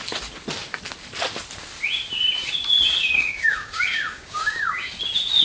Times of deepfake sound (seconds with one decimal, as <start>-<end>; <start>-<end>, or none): 3.0-4.9